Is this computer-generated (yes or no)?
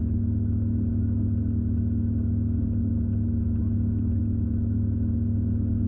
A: no